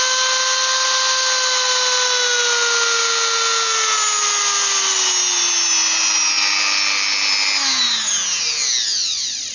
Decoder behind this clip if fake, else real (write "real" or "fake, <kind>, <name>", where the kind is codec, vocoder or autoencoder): real